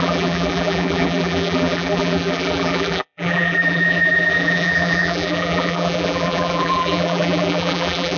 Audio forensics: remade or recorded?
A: remade